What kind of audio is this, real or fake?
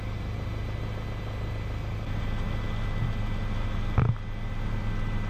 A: real